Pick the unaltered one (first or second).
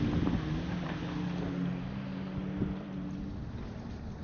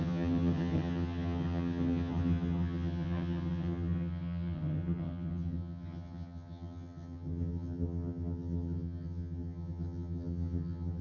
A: first